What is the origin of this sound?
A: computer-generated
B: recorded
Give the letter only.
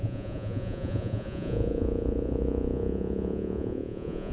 A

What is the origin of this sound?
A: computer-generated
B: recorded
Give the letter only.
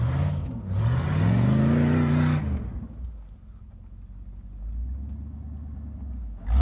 B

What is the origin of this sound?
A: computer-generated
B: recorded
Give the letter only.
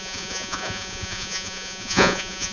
A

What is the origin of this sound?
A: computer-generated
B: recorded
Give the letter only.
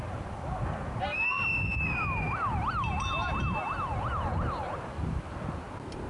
B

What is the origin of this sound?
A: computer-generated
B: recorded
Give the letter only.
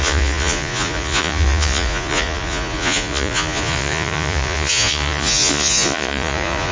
A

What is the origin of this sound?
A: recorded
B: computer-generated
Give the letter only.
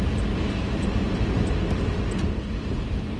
A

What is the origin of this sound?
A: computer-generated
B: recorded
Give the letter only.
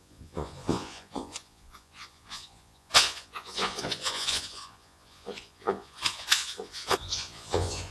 A